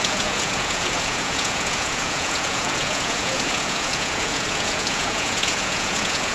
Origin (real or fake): fake